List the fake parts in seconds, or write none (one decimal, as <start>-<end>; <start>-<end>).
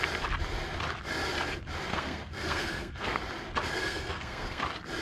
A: 1.9-3.2; 3.8-4.6